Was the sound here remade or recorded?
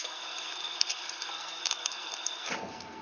remade